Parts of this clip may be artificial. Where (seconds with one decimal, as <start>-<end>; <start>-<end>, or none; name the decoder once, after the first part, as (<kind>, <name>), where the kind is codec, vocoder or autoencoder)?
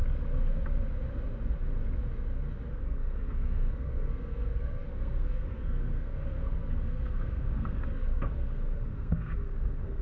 2.7-10.0 (codec, SNAC)